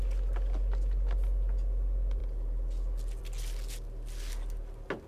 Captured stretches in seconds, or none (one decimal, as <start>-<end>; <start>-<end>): 0.0-5.1